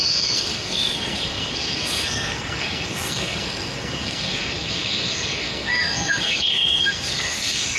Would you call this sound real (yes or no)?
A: no